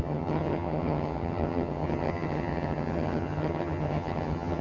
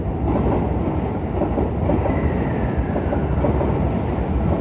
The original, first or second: second